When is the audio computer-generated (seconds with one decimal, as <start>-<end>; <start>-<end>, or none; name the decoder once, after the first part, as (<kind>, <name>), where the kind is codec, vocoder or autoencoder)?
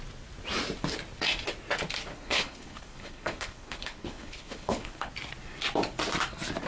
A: 2.1-5.1 (codec, HILCodec)